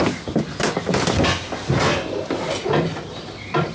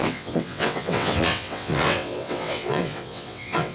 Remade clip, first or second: second